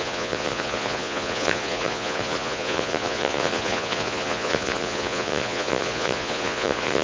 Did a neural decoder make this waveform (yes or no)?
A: yes